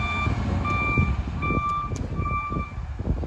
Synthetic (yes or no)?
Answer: no